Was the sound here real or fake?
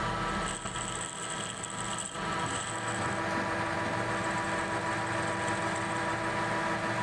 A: real